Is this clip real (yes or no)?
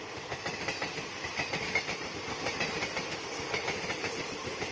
yes